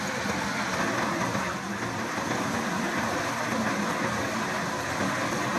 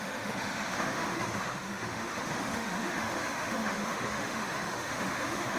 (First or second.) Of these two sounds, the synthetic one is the second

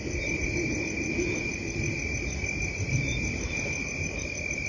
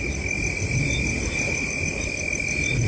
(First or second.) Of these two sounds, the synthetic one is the first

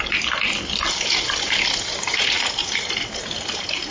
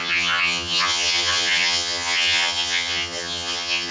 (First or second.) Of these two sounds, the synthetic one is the second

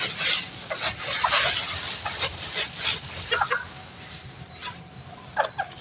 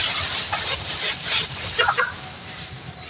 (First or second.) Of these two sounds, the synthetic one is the second